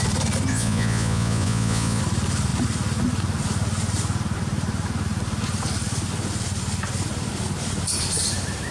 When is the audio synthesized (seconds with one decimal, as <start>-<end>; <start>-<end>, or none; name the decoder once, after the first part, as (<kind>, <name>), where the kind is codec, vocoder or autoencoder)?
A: 0.5-2.0 (vocoder, Vocos)